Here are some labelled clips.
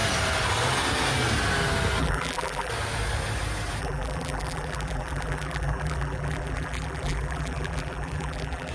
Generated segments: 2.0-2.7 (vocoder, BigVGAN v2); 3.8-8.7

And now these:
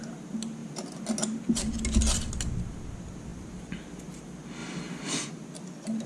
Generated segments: none